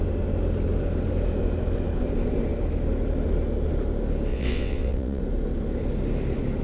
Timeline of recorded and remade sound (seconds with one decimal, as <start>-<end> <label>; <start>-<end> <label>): 0.0-4.3 recorded; 4.3-5.2 remade; 5.2-6.6 recorded